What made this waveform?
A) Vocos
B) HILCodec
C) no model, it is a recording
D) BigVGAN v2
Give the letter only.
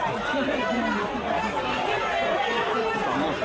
C